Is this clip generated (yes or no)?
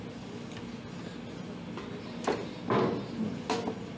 no